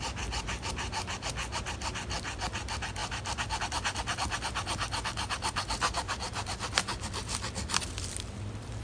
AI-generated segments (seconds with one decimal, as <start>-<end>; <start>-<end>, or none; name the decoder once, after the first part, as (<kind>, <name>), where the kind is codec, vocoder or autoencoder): none